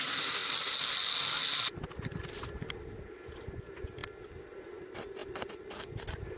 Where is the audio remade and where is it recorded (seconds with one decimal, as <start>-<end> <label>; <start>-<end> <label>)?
0.0-6.4 recorded